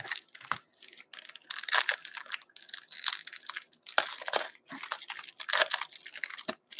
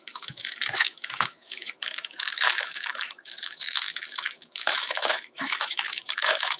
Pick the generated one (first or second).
second